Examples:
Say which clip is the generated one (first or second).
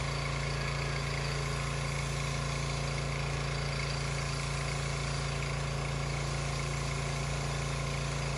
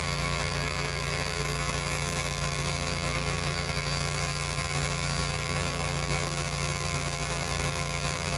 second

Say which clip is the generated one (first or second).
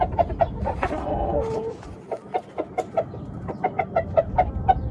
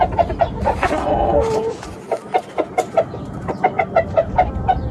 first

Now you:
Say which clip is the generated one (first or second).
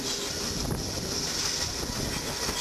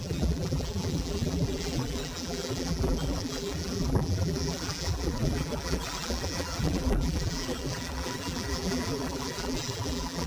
second